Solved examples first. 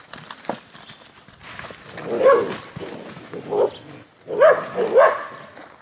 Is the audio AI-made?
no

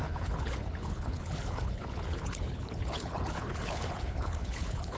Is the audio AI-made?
yes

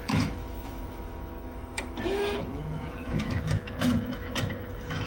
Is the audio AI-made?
yes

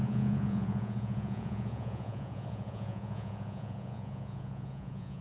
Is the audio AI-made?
yes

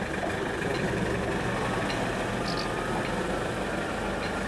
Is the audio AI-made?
no